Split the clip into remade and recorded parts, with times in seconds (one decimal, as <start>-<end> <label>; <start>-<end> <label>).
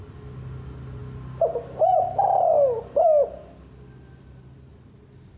0.0-5.4 recorded